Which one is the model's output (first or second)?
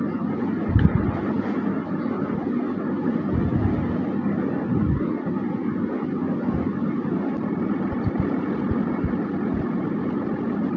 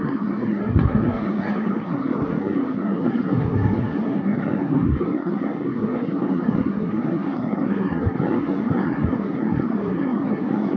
second